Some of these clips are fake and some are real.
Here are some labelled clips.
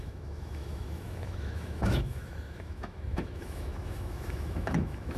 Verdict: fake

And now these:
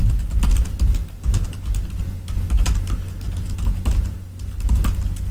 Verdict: real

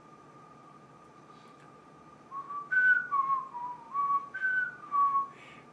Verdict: real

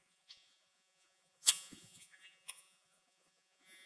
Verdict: fake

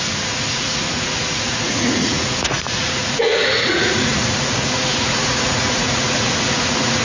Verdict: fake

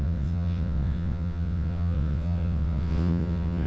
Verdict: fake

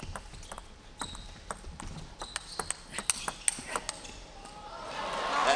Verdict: real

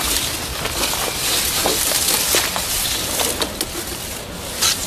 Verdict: real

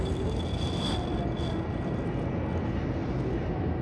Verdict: real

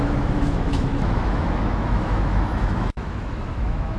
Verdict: fake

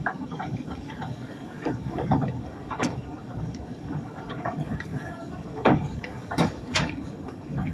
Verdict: fake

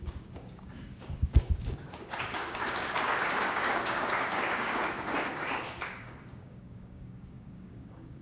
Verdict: fake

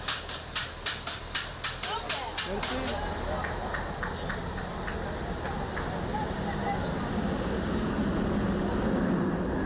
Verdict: real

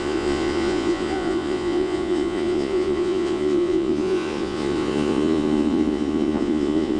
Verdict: fake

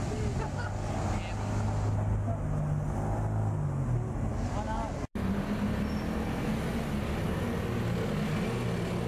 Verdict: real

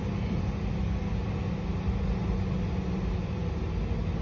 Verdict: real